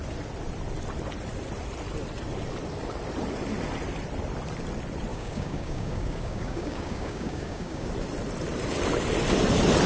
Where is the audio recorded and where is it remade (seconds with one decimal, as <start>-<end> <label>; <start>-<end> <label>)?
0.0-5.1 recorded; 5.1-7.9 remade; 7.9-9.9 recorded